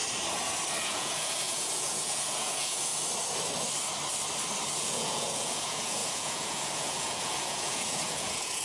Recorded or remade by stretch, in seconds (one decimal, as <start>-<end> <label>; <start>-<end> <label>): 0.0-0.8 recorded; 0.8-2.9 remade; 2.9-4.8 recorded; 4.8-8.6 remade